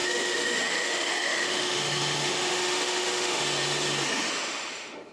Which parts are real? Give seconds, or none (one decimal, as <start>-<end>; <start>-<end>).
3.4-4.3